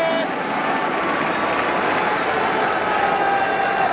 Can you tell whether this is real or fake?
real